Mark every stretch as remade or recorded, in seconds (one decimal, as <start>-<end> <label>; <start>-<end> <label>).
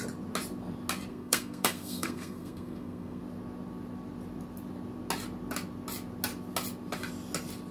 0.0-1.1 recorded; 1.1-3.2 remade; 3.2-7.7 recorded